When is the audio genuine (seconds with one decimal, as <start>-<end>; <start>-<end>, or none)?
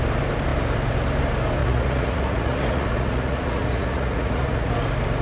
0.0-1.6; 4.7-5.2